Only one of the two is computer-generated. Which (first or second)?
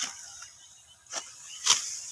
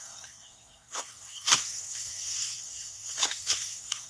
second